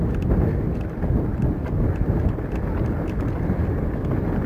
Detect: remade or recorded recorded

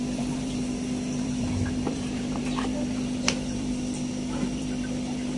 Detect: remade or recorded remade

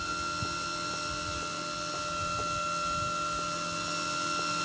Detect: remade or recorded recorded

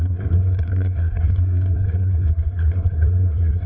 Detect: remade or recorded remade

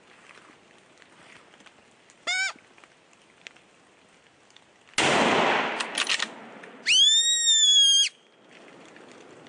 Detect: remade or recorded recorded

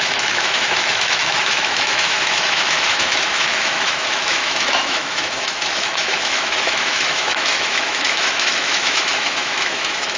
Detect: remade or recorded remade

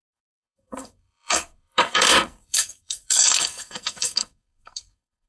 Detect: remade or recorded remade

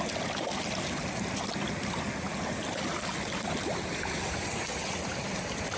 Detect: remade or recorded recorded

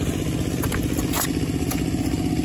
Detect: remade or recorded recorded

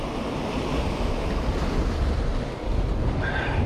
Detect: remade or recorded recorded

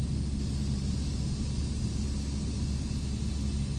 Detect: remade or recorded recorded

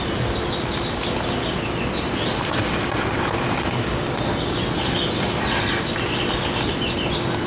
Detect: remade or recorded recorded